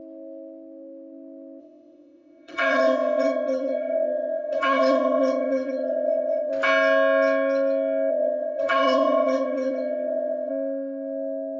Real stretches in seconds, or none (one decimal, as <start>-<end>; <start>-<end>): 0.0-1.6; 6.5-8.1; 10.5-11.6